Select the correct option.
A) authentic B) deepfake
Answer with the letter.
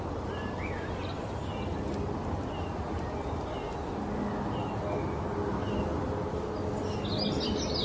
A